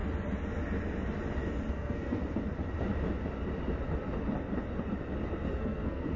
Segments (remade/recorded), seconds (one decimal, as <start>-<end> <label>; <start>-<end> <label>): 0.0-1.7 recorded; 1.7-2.2 remade; 2.2-5.6 recorded; 5.6-6.2 remade